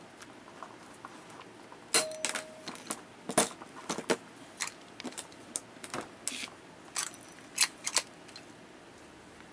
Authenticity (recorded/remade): recorded